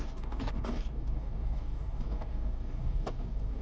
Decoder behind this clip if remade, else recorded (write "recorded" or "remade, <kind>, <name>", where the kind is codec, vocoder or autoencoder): remade, codec, DAC